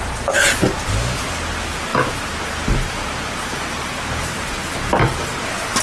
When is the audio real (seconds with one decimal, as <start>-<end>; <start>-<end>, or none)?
0.0-5.8